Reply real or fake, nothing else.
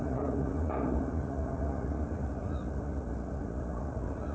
fake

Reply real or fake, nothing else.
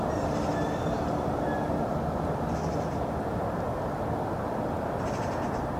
real